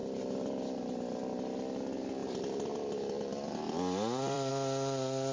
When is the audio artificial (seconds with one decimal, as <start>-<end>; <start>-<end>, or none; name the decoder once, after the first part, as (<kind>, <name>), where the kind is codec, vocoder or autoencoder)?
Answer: 0.0-1.2 (vocoder, BigVGAN v2); 2.2-4.5